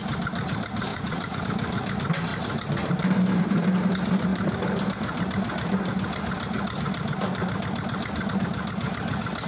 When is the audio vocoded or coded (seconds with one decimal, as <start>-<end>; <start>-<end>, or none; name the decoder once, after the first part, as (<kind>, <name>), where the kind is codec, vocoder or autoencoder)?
0.9-1.4 (vocoder, Vocos)